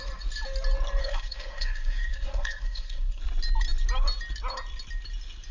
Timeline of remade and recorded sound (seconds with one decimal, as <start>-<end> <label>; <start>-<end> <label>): 0.0-1.0 recorded; 1.0-3.2 remade; 3.2-5.5 recorded